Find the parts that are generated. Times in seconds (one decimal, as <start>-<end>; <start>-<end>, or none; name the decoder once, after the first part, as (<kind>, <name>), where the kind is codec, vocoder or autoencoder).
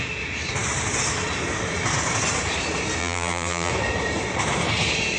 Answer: 3.0-3.7 (vocoder, BigVGAN v2)